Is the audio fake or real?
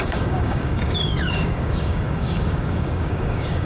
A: fake